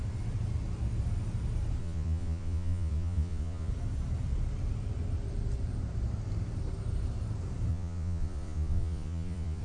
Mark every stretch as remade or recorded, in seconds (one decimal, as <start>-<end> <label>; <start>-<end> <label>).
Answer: 0.0-1.8 recorded; 1.8-3.7 remade; 3.7-7.7 recorded; 7.7-9.6 remade